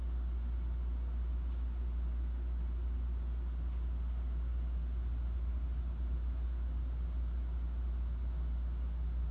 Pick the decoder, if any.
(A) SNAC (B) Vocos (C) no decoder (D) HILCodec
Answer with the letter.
C